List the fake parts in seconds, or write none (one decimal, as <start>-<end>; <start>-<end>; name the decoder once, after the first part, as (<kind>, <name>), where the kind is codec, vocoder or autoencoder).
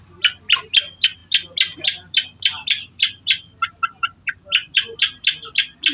none